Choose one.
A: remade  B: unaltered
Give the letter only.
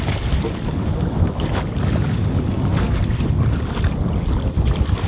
B